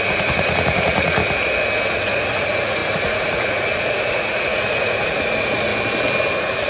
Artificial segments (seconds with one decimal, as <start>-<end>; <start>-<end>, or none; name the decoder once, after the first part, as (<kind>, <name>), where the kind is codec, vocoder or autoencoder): 0.0-1.2 (vocoder, Vocos); 1.9-5.7; 6.3-6.7

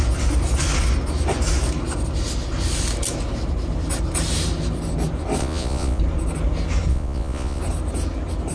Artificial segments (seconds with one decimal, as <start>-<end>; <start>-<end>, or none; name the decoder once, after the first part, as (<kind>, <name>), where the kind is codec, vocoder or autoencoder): 5.4-6.0 (vocoder, Vocos); 6.9-7.6

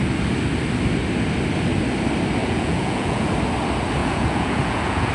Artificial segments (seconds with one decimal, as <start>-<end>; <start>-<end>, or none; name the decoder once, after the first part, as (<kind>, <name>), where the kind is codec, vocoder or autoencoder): 2.4-3.3 (vocoder, Vocos); 4.0-5.1

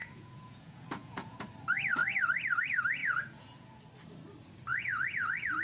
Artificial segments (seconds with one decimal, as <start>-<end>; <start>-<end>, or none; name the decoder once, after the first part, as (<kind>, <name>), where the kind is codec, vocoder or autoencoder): 0.0-1.4 (vocoder, Vocos); 3.0-3.8; 4.7-5.6

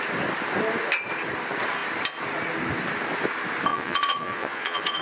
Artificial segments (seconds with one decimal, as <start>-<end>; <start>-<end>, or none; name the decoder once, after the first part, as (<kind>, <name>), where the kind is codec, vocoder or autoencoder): 3.7-5.0 (vocoder, Vocos)

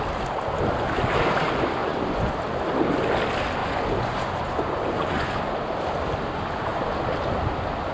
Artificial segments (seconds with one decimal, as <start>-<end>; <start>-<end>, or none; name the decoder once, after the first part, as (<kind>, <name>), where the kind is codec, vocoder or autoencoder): 1.8-2.3 (vocoder, Vocos); 3.6-5.5